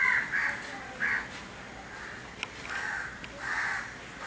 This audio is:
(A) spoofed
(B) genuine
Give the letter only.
B